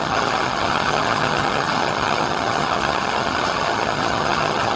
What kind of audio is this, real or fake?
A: fake